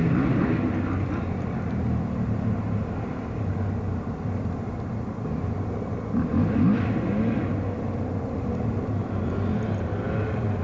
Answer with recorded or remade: recorded